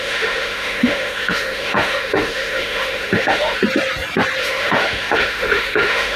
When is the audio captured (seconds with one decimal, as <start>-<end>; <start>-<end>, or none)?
3.6-4.4